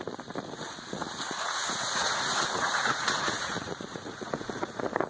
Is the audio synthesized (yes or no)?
yes